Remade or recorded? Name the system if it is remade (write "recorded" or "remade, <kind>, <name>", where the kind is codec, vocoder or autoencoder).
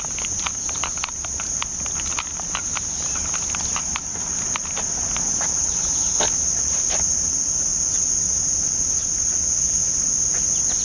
recorded